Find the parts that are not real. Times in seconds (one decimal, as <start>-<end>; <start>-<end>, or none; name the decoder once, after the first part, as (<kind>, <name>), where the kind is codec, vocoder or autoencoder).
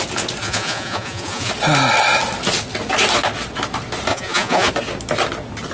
0.4-1.5 (vocoder, Vocos); 4.1-4.7